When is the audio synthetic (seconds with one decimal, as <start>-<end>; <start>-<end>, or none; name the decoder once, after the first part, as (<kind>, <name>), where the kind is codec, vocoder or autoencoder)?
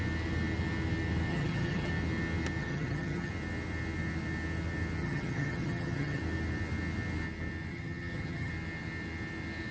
1.3-1.9 (vocoder, HiFi-GAN); 2.6-3.3; 5.0-6.2; 7.7-8.5